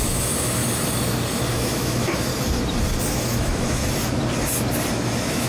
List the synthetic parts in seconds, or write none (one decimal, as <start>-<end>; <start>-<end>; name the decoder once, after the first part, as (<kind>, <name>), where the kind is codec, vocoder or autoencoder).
0.0-0.6 (autoencoder, DAC-VAE); 1.5-2.3; 3.1-3.8; 4.9-5.5